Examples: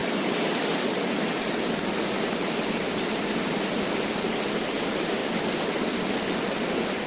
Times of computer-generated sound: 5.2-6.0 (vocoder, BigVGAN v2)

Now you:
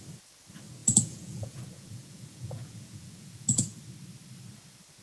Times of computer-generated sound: 0.8-3.8 (vocoder, Vocos)

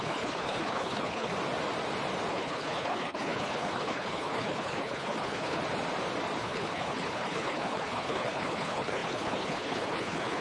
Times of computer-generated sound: 0.0-1.3 (codec, HILCodec); 2.3-5.6; 6.4-10.4

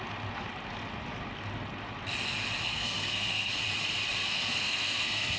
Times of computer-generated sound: 2.7-3.5 (codec, SNAC); 4.2-5.4

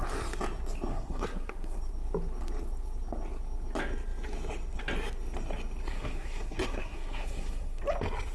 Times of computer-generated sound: 0.9-1.8 (codec, SNAC); 5.9-7.8

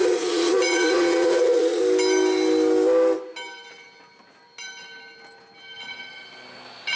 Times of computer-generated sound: 0.0-1.8 (vocoder, Vocos)